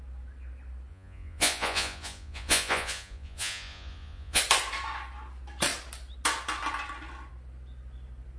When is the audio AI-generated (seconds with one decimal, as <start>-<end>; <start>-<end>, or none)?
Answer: 0.9-4.4